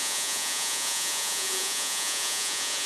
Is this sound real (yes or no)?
no